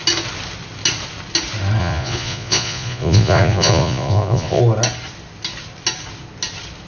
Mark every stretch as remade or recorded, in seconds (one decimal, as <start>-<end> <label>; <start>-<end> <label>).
0.0-1.8 recorded; 1.8-4.6 remade; 4.6-6.9 recorded